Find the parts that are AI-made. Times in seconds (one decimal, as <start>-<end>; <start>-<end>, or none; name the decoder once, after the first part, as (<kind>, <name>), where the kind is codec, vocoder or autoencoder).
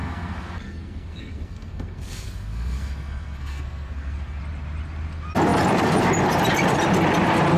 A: 0.0-4.4 (codec, SNAC)